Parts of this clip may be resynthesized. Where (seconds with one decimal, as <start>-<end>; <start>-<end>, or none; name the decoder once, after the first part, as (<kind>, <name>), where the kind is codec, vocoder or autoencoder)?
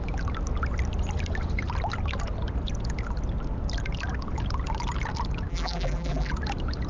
5.5-6.3 (vocoder, BigVGAN v2)